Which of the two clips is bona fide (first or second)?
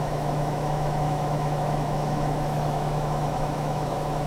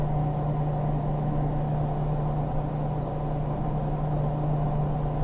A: second